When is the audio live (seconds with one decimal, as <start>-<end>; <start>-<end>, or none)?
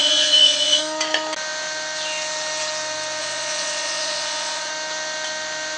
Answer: 0.8-3.2; 4.7-5.8